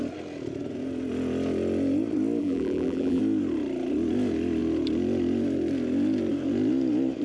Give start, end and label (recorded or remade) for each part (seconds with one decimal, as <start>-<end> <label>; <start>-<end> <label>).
0.0-2.4 recorded; 2.4-3.2 remade; 3.2-7.2 recorded